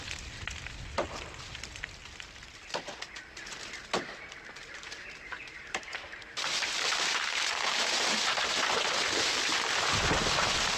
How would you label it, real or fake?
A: real